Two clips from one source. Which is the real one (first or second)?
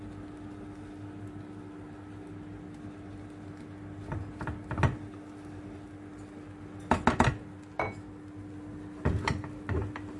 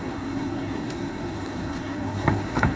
first